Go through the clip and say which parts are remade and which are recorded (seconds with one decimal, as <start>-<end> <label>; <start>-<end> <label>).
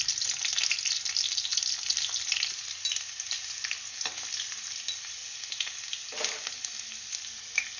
0.0-1.5 recorded; 1.5-4.0 remade; 4.0-7.8 recorded